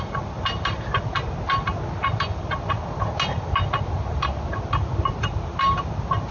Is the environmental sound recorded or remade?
recorded